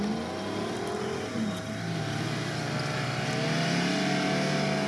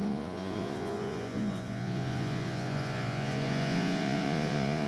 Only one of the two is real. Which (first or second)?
first